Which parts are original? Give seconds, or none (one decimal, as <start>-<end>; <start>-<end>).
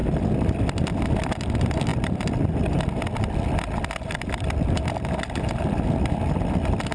0.0-6.9